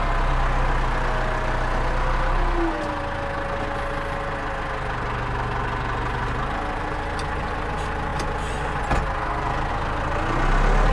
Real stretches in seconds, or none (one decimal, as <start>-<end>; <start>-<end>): 0.0-10.9